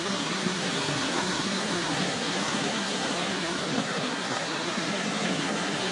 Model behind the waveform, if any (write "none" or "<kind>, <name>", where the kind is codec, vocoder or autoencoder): codec, SNAC